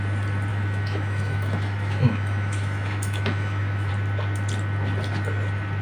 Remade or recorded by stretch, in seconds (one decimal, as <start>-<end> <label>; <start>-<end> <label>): 0.0-0.5 recorded; 0.5-3.9 remade; 3.9-5.8 recorded